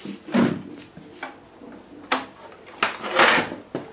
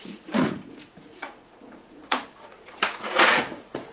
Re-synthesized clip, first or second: second